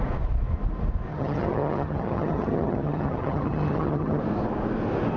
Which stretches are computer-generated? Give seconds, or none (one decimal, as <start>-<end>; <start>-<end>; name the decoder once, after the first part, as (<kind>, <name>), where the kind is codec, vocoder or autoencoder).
1.1-4.2 (vocoder, HiFi-GAN)